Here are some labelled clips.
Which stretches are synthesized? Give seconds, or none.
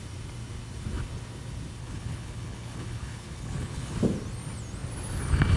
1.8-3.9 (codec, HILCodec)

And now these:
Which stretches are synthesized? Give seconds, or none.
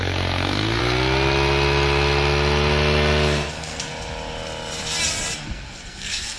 0.0-0.8 (codec, SNAC); 3.5-3.9; 5.4-6.4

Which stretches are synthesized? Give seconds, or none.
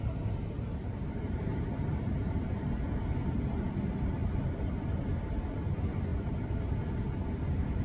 0.8-2.4 (vocoder, BigVGAN v2)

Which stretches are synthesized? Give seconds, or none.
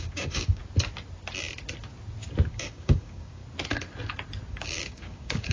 0.0-0.6 (codec, DAC); 2.5-3.4; 4.5-5.5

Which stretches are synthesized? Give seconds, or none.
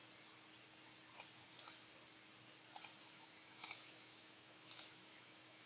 3.0-5.7 (autoencoder, DAC-VAE)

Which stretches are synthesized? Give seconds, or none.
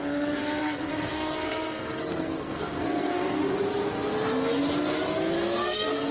0.0-3.4 (codec, SNAC); 5.3-6.1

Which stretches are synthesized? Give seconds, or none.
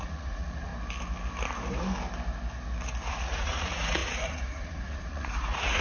0.0-0.7 (vocoder, Vocos); 3.1-5.8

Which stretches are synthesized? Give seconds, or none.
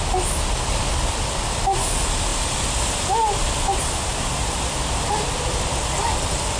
none